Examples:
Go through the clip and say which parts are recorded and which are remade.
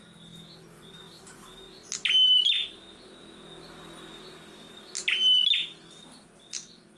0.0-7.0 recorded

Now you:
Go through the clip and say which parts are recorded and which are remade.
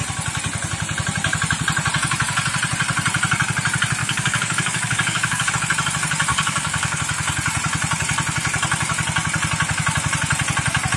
0.0-4.0 recorded; 4.0-5.5 remade; 5.5-6.3 recorded; 6.3-7.0 remade; 7.0-11.0 recorded